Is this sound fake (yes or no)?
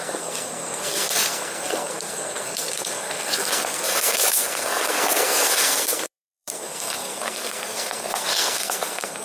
yes